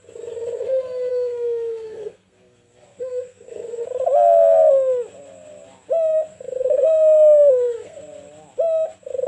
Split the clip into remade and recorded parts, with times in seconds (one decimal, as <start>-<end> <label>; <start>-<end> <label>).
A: 0.0-1.1 recorded; 1.1-3.8 remade; 3.8-6.3 recorded; 6.3-8.0 remade; 8.0-9.3 recorded